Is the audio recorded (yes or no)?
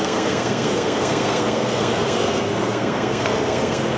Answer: no